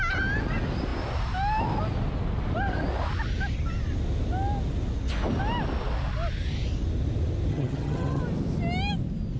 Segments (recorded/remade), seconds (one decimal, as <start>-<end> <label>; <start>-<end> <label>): 0.0-7.5 recorded; 7.5-8.2 remade; 8.2-9.4 recorded